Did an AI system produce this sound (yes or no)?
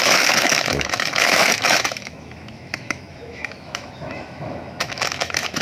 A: yes